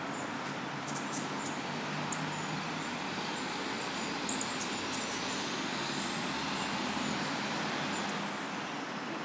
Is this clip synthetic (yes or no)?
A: no